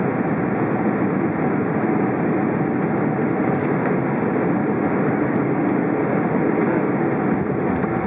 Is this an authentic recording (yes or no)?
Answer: yes